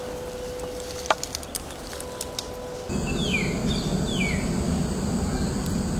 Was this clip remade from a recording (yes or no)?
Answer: no